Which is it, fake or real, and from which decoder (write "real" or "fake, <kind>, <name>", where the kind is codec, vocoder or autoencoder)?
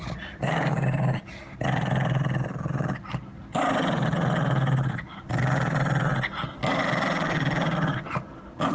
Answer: real